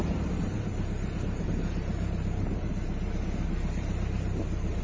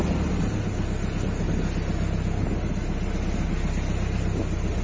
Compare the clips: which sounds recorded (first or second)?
second